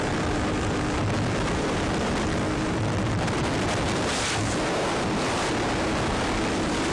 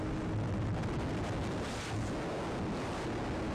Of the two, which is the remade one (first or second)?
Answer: first